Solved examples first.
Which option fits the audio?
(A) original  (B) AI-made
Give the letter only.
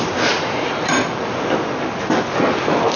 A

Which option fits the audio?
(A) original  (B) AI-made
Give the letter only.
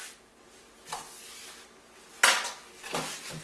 A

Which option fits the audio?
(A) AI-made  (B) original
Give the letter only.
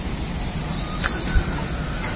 B